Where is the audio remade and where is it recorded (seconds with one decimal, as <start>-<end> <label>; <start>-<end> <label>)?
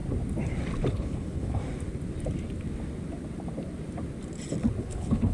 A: 0.0-0.9 recorded; 0.9-1.6 remade; 1.6-4.8 recorded; 4.8-5.3 remade